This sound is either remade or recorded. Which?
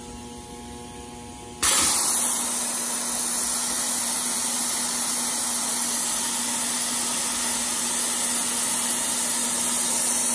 recorded